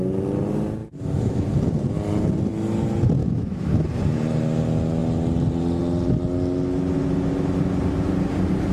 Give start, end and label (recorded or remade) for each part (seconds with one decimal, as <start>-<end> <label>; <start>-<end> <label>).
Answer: 0.0-0.8 recorded; 0.8-1.5 remade; 1.5-3.2 recorded; 3.2-3.9 remade; 3.9-8.7 recorded